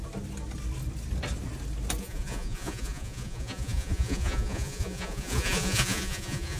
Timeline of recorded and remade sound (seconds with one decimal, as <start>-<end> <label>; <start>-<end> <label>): 0.0-2.0 recorded; 2.0-6.6 remade